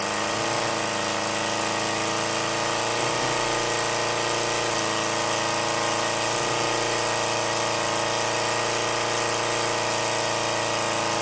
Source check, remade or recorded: recorded